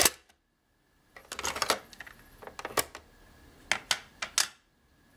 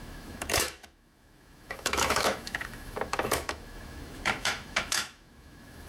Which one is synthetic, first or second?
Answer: second